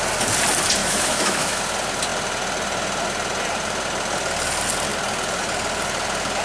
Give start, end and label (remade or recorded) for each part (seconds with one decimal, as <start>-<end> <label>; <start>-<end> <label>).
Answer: 0.0-0.8 recorded; 0.8-1.6 remade; 1.6-6.4 recorded